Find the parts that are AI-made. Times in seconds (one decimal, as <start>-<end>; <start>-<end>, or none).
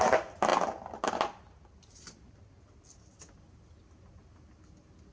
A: none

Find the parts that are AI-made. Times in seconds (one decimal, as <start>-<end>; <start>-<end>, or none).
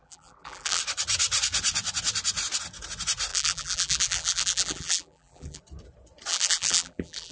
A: 0.0-0.8; 3.3-5.6; 6.3-7.3